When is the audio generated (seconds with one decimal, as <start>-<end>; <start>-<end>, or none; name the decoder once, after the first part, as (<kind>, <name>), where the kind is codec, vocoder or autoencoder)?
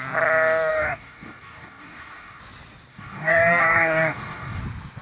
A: 0.7-2.4 (codec, DAC); 2.9-4.6